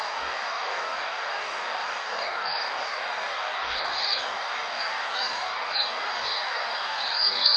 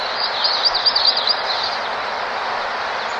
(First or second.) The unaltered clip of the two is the second